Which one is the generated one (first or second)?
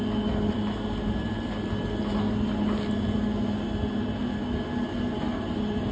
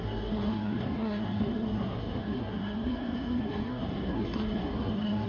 second